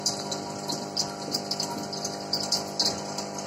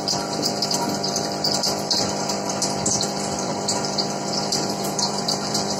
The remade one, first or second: second